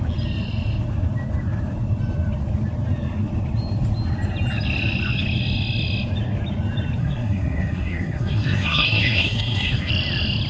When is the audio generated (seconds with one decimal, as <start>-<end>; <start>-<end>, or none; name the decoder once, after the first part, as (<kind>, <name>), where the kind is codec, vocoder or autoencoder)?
7.0-9.9 (codec, SNAC)